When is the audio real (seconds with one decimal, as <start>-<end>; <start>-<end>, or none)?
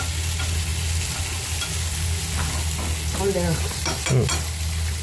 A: 0.0-5.0